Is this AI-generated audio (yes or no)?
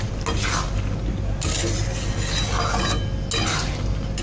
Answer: no